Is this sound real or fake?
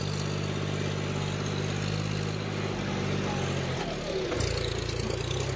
real